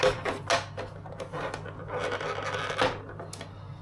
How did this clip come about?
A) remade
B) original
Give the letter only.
B